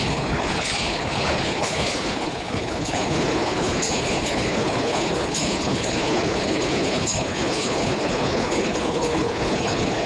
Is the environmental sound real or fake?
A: fake